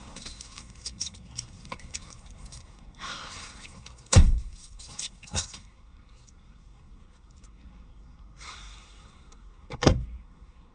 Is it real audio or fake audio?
fake